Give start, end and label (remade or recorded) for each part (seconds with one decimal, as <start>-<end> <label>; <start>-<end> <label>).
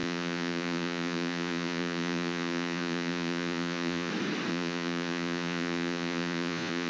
0.0-4.1 remade; 4.1-4.5 recorded; 4.5-6.9 remade